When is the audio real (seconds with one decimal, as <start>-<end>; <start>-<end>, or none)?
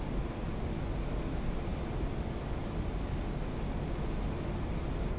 0.0-5.2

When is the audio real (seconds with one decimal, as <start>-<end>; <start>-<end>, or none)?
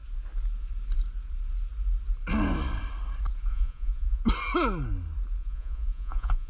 0.0-3.5; 4.2-5.4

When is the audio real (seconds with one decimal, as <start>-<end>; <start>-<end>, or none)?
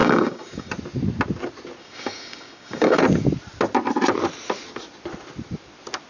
0.7-1.8; 3.0-6.1